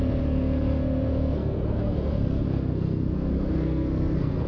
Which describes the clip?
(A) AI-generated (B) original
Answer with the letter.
A